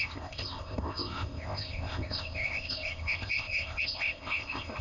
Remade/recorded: remade